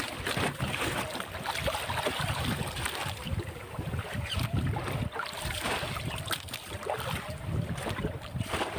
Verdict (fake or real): real